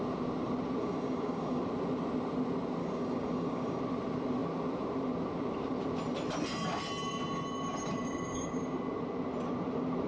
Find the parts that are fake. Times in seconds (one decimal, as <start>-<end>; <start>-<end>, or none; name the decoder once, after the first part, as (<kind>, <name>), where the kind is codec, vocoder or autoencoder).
0.8-1.6 (codec, DAC); 2.8-3.8; 8.0-8.6